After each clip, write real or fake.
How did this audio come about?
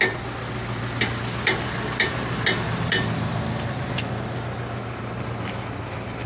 real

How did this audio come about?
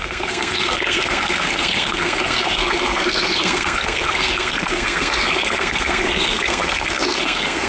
fake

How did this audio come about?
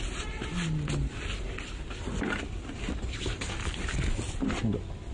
real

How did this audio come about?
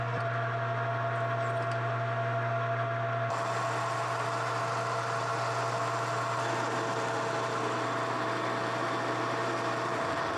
real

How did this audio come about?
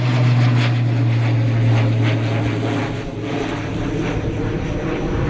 real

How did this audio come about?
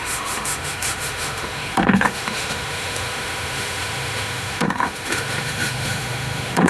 fake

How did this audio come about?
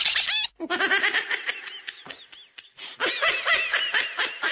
real